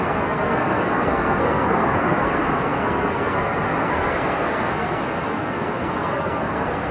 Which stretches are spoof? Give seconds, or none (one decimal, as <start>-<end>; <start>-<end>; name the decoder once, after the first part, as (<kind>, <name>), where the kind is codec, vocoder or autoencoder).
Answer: 0.0-6.9 (codec, SNAC)